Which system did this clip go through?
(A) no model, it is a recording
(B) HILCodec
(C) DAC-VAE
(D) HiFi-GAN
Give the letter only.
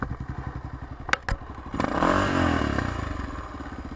A